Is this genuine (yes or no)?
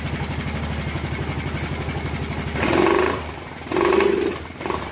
yes